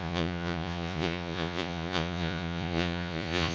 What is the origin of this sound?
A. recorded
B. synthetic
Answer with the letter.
B